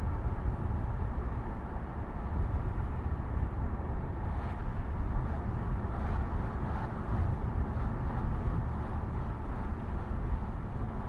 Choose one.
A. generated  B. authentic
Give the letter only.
B